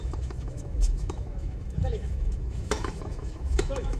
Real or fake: fake